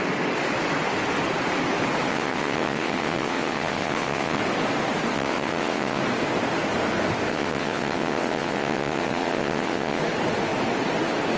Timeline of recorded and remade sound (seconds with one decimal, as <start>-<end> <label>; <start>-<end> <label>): 0.0-2.1 recorded; 2.1-4.4 remade; 4.4-5.1 recorded; 5.1-6.0 remade; 6.0-7.3 recorded; 7.3-10.0 remade; 10.0-11.4 recorded